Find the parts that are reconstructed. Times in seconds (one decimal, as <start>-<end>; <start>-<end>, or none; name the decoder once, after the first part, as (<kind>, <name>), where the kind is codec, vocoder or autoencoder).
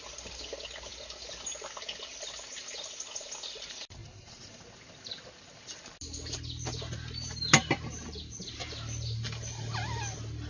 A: 4.0-4.6 (vocoder, BigVGAN v2); 7.6-8.4